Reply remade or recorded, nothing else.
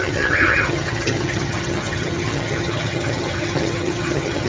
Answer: remade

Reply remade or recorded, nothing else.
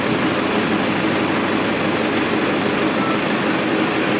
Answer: recorded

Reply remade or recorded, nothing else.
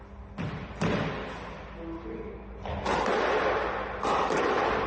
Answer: recorded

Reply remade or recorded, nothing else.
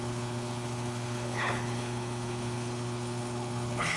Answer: remade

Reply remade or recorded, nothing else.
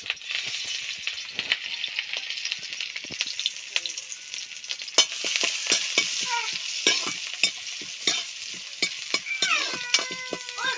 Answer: recorded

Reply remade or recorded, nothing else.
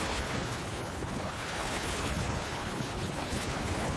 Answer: remade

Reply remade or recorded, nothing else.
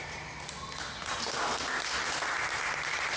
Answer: recorded